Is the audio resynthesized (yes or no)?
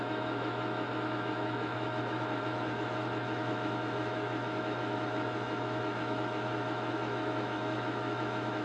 yes